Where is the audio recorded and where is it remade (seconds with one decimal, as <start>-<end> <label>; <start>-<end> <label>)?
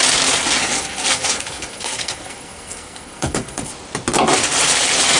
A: 0.0-0.6 recorded; 0.6-3.7 remade; 3.7-5.2 recorded